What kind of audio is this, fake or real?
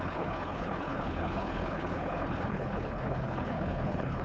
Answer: fake